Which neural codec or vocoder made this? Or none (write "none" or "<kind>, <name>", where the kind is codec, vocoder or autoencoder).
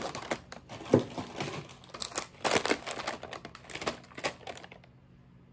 none